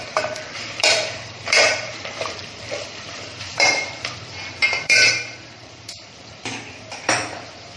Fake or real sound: fake